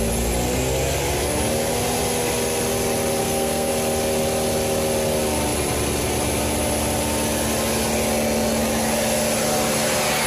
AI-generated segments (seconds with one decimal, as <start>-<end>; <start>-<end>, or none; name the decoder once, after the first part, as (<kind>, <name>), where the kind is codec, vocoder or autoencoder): 3.2-3.7 (codec, SNAC)